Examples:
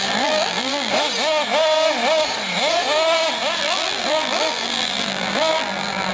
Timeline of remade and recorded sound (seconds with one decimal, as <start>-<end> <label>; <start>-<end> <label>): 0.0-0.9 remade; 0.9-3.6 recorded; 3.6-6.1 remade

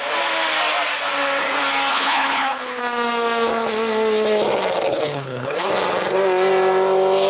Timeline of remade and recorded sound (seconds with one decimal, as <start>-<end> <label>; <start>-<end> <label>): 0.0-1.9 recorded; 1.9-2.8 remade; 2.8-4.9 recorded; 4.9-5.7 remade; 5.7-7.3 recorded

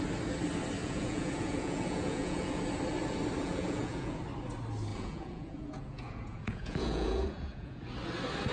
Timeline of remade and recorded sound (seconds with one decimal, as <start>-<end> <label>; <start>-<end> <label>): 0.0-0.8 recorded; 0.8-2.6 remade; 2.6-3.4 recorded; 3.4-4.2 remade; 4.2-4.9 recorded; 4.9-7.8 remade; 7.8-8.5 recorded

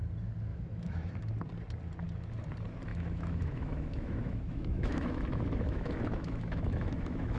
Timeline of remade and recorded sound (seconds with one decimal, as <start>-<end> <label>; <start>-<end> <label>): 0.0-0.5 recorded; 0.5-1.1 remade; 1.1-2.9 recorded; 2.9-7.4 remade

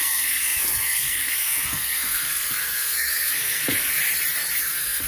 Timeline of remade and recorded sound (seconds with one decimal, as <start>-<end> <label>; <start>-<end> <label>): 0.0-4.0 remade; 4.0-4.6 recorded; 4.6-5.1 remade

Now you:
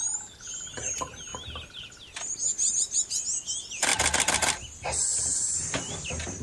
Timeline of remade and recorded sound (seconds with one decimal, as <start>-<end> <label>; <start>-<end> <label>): 0.0-6.4 recorded

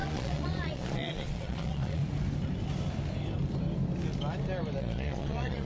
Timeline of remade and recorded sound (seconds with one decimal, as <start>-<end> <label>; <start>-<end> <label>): 0.0-2.0 remade; 2.0-4.8 recorded; 4.8-5.6 remade

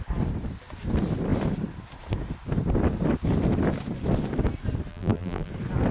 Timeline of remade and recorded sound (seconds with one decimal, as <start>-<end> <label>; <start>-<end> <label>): 0.0-4.9 recorded; 4.9-5.5 remade; 5.5-5.9 recorded